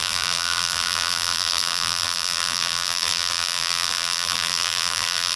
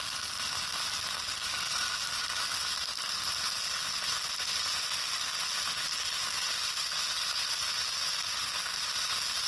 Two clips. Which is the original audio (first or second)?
second